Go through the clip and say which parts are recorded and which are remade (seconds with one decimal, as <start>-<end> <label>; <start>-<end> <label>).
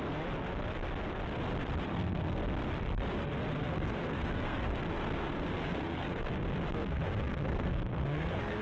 0.0-1.9 recorded; 1.9-2.4 remade; 2.4-3.5 recorded; 3.5-6.3 remade; 6.3-6.7 recorded; 6.7-8.6 remade